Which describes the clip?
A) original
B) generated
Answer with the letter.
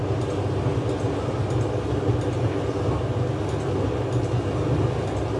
A